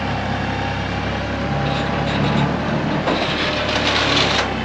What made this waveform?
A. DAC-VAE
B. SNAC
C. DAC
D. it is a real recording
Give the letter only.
D